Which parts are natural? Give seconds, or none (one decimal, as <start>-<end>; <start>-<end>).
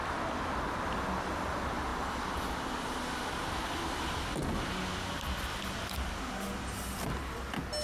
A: 0.0-7.8